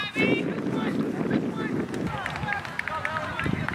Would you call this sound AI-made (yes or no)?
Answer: no